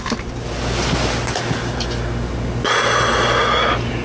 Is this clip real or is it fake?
real